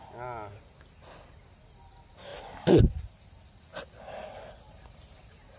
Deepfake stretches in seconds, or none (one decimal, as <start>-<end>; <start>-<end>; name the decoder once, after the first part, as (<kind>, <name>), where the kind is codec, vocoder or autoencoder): none